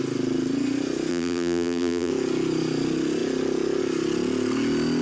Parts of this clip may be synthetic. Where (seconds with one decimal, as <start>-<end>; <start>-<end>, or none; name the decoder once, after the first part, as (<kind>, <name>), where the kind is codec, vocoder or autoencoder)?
1.1-2.1 (vocoder, BigVGAN v2)